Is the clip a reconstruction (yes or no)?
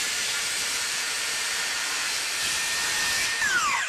yes